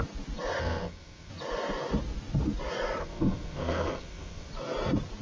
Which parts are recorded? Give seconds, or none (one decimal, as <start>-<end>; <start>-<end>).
0.0-0.6; 1.3-3.0; 4.5-5.2